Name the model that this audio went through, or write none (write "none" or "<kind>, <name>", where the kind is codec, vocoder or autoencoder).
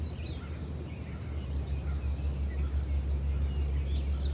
none